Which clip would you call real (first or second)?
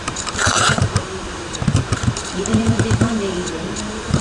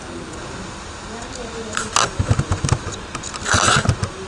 second